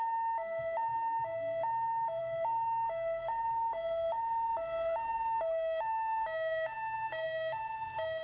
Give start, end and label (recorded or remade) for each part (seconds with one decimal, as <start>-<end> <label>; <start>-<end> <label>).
0.0-8.2 recorded